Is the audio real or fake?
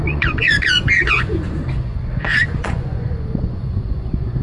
fake